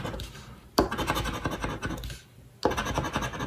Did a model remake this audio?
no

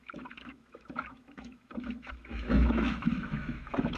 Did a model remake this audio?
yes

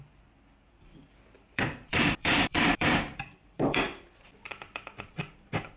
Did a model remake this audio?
yes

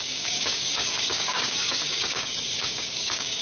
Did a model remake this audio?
yes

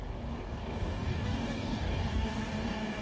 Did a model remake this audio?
yes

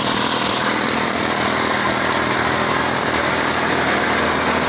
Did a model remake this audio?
no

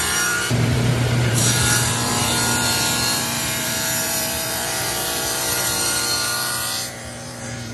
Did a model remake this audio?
yes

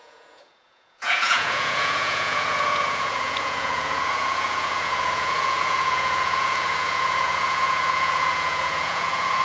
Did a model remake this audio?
yes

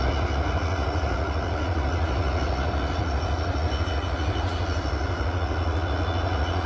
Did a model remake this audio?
yes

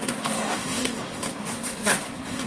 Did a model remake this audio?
yes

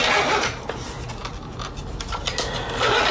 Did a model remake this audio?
no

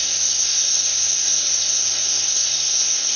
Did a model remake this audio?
yes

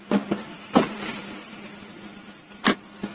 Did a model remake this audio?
no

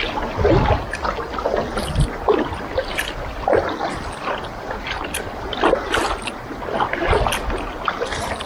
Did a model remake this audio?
no